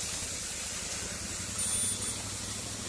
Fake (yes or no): no